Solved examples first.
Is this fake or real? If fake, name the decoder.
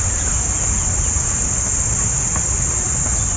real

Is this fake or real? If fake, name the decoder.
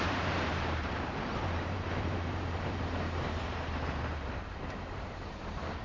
fake, vocoder, BigVGAN v2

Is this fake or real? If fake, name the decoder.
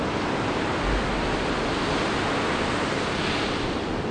real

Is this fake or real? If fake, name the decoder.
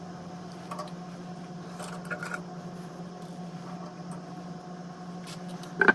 real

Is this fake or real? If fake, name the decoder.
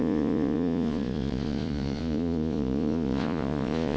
fake, vocoder, Vocos